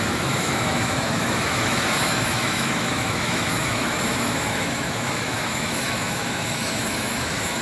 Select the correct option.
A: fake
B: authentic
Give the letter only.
A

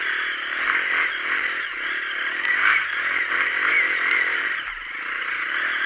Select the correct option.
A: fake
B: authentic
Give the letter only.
A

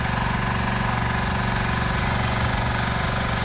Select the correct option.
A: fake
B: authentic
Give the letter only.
A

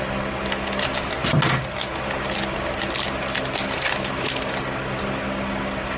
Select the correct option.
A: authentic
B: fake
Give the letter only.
A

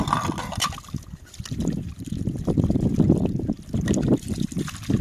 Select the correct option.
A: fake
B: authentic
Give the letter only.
B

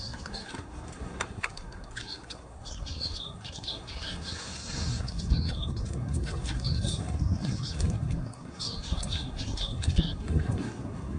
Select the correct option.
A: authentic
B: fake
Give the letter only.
B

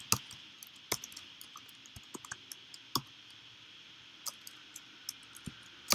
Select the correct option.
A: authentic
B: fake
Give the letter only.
A